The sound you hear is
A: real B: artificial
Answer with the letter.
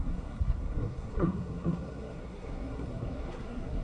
B